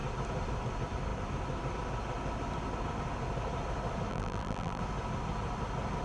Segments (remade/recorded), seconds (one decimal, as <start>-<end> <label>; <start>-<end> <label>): 0.0-4.1 recorded; 4.1-4.8 remade; 4.8-6.0 recorded

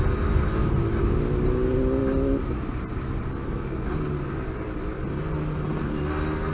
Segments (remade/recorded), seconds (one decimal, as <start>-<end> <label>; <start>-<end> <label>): 0.0-6.5 recorded

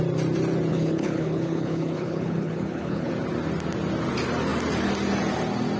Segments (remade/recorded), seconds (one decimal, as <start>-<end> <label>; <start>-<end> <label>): 0.0-0.7 recorded; 0.7-3.1 remade; 3.1-5.8 recorded